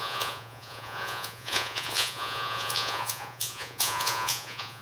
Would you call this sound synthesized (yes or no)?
yes